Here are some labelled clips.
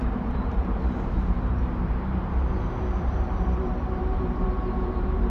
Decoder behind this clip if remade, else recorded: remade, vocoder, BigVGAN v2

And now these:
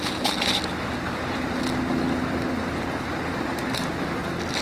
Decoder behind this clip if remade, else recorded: recorded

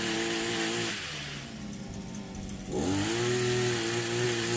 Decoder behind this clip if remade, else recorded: recorded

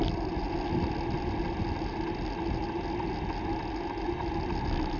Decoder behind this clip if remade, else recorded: recorded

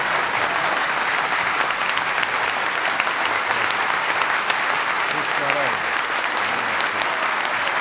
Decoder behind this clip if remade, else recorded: recorded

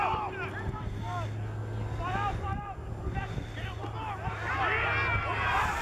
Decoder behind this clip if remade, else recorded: recorded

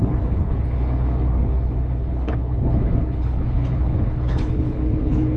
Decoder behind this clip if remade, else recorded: remade, codec, HILCodec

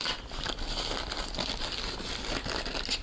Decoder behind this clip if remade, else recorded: recorded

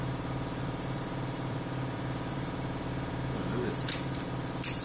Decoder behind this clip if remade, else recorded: remade, vocoder, BigVGAN v2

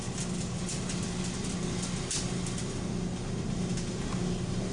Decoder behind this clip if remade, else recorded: recorded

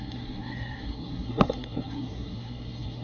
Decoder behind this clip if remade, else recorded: remade, codec, SNAC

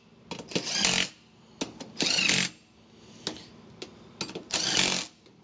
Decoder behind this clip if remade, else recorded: recorded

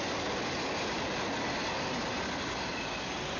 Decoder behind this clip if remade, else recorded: recorded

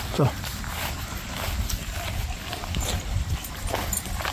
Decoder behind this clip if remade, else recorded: recorded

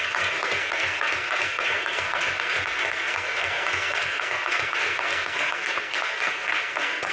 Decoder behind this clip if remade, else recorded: remade, codec, SNAC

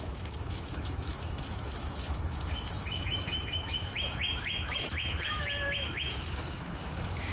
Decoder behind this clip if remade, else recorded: remade, autoencoder, DAC-VAE